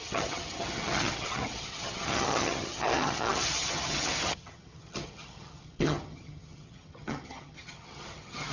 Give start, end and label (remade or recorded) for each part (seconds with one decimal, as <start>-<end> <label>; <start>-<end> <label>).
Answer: 0.0-8.5 remade